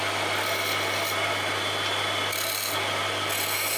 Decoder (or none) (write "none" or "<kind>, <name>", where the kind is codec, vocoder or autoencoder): none